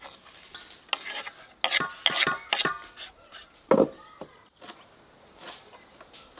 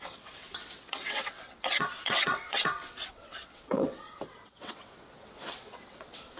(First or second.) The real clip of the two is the first